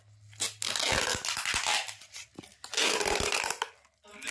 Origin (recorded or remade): recorded